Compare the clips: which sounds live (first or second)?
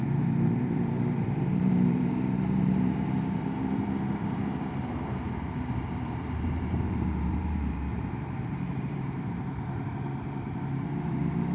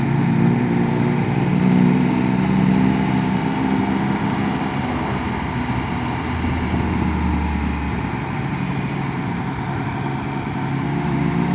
second